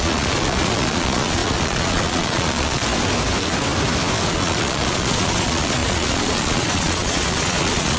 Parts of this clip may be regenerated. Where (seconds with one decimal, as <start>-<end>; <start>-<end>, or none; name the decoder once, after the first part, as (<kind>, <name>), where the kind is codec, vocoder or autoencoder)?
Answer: 0.0-2.8 (vocoder, Vocos); 4.3-8.0